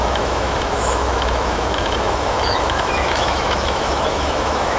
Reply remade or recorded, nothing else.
remade